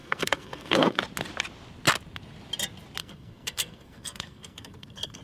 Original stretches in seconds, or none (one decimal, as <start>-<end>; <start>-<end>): 1.0-3.0